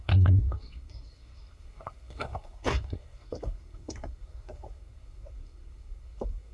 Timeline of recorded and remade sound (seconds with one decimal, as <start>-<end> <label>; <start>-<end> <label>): 0.0-6.5 remade